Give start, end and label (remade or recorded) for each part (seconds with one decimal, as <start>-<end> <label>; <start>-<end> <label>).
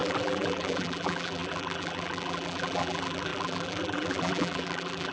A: 0.0-5.1 remade